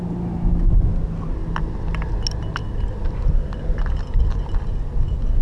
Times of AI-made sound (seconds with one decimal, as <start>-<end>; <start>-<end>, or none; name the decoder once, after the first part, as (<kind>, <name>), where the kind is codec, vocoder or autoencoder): none